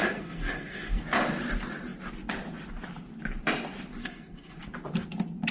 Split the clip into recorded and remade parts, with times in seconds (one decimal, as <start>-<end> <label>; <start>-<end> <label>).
0.0-1.0 remade; 1.0-4.0 recorded; 4.0-4.6 remade; 4.6-5.5 recorded